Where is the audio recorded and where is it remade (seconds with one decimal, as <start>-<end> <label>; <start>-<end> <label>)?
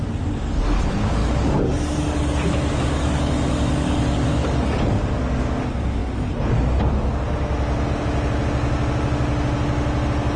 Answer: 0.0-1.2 recorded; 1.2-5.6 remade; 5.6-10.4 recorded